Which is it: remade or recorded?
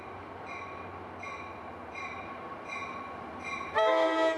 recorded